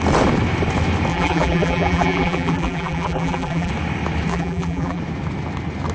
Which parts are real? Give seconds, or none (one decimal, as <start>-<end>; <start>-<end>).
0.0-1.1; 3.7-4.3; 5.0-5.9